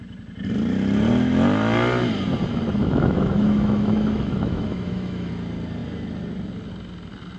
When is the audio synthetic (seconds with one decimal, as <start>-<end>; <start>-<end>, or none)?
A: 2.8-5.3

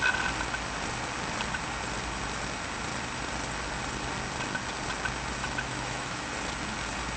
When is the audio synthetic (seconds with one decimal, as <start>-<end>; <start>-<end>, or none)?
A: 5.4-6.3

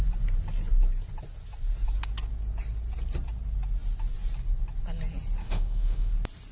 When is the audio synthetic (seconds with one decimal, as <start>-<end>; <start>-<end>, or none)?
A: 5.4-6.1

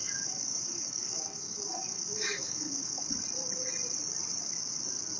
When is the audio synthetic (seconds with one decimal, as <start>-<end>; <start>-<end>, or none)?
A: 0.0-3.1

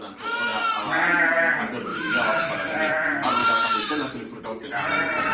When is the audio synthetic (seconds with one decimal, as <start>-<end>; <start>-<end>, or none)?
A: 1.9-2.9; 3.4-4.4